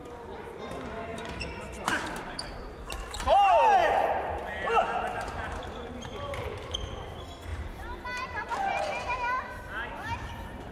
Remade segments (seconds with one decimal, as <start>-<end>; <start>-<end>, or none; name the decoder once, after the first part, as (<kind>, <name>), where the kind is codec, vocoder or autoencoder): 1.1-3.2 (vocoder, BigVGAN v2); 3.8-5.6; 7.5-8.5